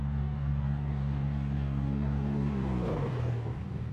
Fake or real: fake